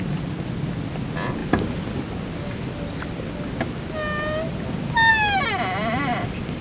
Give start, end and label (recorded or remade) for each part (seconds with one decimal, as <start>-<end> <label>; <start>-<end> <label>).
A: 0.0-5.9 recorded; 5.9-6.6 remade